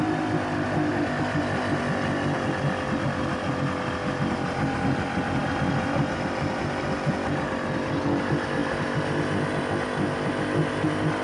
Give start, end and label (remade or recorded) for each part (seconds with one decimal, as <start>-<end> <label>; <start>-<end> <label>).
0.0-11.2 recorded